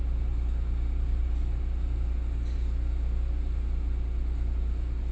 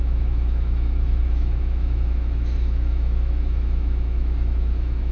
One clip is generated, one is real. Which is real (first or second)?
first